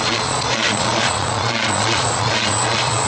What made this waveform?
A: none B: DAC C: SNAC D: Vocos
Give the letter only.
D